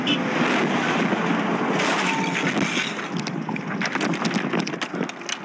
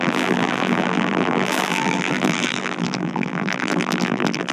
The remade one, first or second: second